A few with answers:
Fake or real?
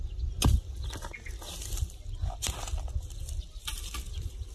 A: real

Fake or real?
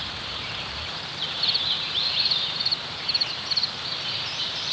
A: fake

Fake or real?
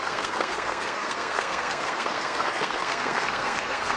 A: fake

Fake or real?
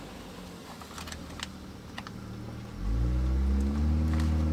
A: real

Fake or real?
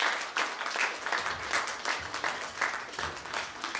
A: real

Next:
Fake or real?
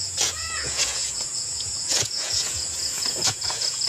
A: fake